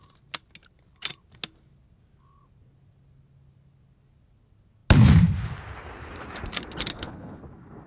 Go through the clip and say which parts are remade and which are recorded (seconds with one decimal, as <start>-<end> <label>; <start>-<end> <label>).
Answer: 0.0-6.9 recorded; 6.9-7.4 remade; 7.4-7.9 recorded